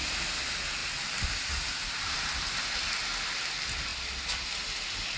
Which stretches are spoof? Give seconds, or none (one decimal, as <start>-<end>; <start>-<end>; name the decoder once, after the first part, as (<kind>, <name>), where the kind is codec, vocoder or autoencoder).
none